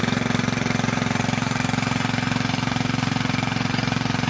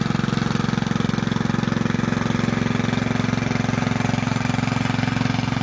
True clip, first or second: second